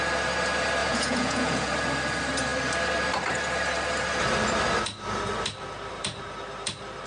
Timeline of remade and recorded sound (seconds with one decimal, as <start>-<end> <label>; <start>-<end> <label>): 0.0-0.8 recorded; 0.8-1.7 remade; 1.7-7.1 recorded